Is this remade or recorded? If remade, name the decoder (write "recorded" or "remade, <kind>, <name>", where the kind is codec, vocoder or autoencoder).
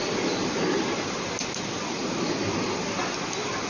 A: recorded